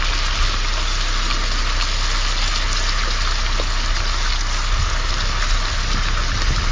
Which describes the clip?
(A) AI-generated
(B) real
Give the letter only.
B